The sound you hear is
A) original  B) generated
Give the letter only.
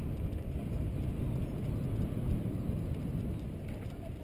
A